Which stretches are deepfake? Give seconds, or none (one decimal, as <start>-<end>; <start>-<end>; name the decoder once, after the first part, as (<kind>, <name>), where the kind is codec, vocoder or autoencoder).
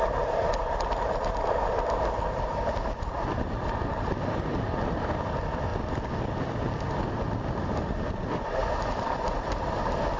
0.0-10.2 (vocoder, BigVGAN v2)